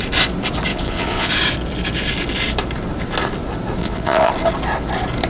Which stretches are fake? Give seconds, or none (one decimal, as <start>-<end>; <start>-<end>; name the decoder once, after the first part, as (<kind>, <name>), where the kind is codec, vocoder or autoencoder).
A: 0.7-1.3 (vocoder, Vocos); 3.8-4.3